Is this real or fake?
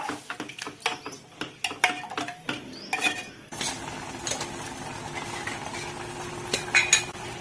real